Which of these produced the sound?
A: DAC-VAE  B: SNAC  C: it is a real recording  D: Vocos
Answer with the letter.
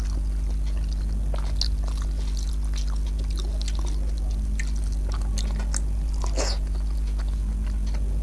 C